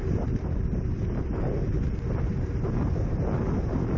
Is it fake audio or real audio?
real